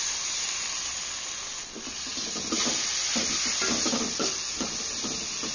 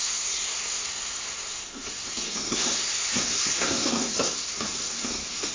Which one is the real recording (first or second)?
first